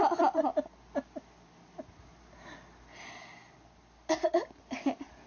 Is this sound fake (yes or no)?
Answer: no